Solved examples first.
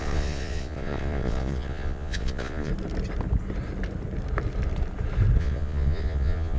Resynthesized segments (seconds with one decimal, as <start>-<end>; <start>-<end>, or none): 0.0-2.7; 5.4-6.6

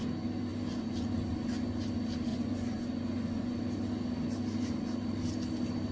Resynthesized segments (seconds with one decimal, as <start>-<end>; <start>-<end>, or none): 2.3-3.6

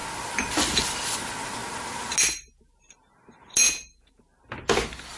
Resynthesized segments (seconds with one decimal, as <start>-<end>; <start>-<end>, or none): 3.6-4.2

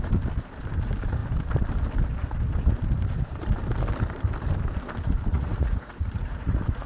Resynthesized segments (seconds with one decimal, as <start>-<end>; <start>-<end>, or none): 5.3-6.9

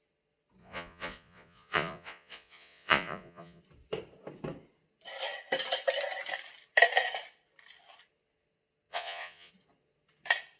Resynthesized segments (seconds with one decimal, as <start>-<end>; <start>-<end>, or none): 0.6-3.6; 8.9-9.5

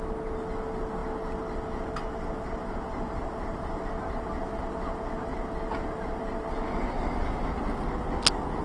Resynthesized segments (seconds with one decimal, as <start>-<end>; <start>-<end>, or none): none

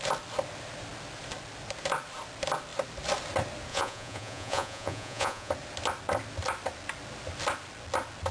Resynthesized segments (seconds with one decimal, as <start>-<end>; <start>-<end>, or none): 3.7-5.5

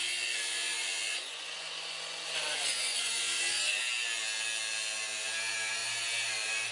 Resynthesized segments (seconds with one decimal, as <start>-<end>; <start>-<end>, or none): 0.0-3.8